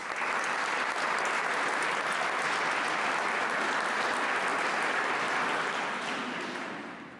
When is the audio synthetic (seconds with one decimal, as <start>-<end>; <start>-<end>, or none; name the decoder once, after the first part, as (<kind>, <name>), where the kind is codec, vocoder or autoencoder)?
none